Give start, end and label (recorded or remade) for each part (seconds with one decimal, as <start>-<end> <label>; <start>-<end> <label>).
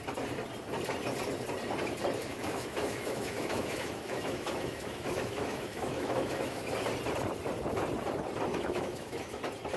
0.0-2.2 recorded; 2.2-6.6 remade; 6.6-8.5 recorded; 8.5-9.4 remade; 9.4-9.8 recorded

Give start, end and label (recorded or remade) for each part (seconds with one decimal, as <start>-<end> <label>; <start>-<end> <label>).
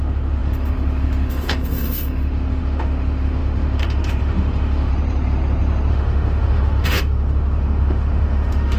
0.0-4.9 remade; 4.9-5.9 recorded; 5.9-8.8 remade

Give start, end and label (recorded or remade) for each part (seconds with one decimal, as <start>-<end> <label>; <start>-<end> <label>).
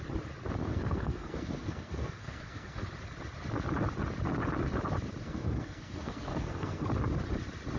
0.0-0.6 recorded; 0.6-2.8 remade; 2.8-5.2 recorded; 5.2-6.9 remade; 6.9-7.8 recorded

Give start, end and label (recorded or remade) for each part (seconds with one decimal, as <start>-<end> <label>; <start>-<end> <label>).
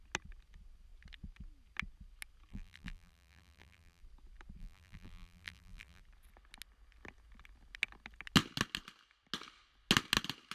0.0-2.5 recorded; 2.5-4.0 remade; 4.0-4.6 recorded; 4.6-6.0 remade; 6.0-10.5 recorded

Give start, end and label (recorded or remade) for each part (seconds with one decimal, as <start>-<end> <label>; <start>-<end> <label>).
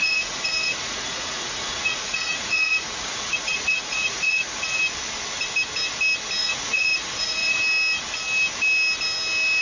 0.0-4.8 remade; 4.8-6.4 recorded; 6.4-7.6 remade; 7.6-9.6 recorded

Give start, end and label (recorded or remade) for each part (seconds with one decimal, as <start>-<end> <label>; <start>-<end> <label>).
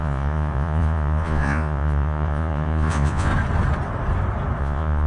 0.0-3.3 remade; 3.3-4.6 recorded; 4.6-5.1 remade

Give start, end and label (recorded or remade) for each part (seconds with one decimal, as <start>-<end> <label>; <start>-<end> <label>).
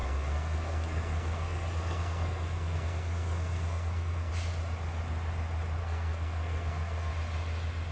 0.0-4.3 remade; 4.3-5.8 recorded; 5.8-7.1 remade; 7.1-7.9 recorded